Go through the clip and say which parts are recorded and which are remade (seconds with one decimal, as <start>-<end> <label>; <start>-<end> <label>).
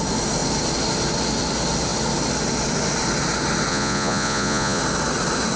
0.0-3.7 recorded; 3.7-4.8 remade; 4.8-5.6 recorded